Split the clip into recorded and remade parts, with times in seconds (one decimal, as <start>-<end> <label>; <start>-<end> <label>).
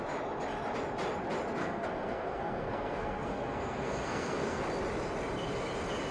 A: 0.0-1.6 recorded; 1.6-4.6 remade; 4.6-6.1 recorded